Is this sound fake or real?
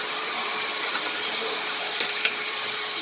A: fake